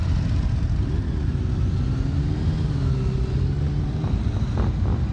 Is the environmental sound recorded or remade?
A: recorded